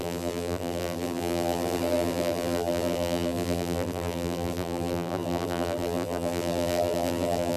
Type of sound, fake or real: fake